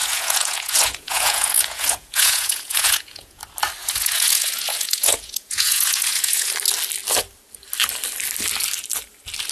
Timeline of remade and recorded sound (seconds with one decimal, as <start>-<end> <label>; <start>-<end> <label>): 0.0-3.4 remade; 3.4-3.8 recorded; 3.8-6.5 remade; 6.5-9.5 recorded